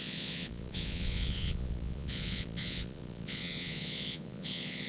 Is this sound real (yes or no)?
no